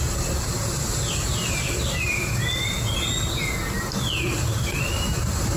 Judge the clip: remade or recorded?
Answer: recorded